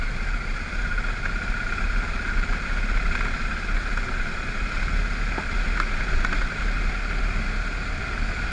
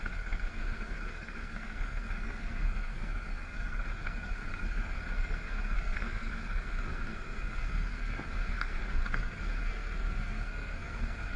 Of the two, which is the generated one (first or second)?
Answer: second